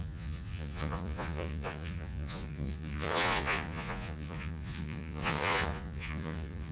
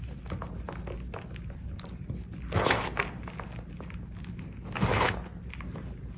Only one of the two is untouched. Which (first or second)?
second